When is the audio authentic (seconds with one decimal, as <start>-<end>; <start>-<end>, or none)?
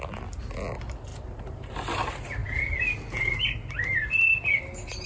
0.0-1.1; 1.7-5.1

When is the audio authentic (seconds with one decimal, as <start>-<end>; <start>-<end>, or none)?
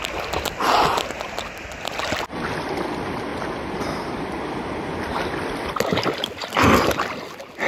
0.0-7.7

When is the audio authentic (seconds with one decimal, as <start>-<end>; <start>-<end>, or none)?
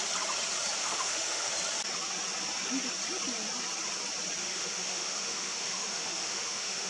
0.0-0.8; 1.5-4.4